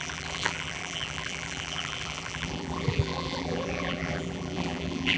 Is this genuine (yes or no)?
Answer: no